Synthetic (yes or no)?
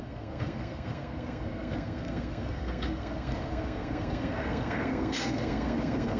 yes